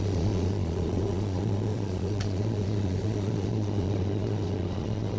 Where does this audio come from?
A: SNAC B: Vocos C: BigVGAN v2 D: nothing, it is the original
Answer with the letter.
B